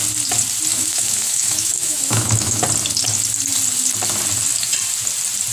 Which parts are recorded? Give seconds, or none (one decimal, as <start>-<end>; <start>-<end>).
0.0-0.7; 2.6-5.5